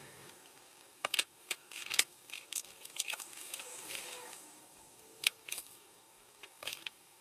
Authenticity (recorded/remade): remade